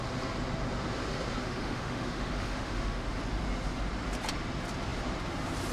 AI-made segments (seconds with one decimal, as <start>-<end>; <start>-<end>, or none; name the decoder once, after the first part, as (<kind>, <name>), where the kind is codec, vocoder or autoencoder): 1.4-3.2 (autoencoder, DAC-VAE)